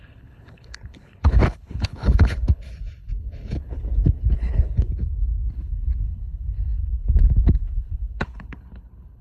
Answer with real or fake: fake